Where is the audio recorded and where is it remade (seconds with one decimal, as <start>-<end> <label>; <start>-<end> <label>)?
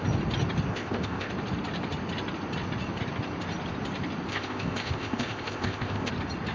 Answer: 0.0-0.7 recorded; 0.7-1.3 remade; 1.3-4.3 recorded; 4.3-6.1 remade; 6.1-6.5 recorded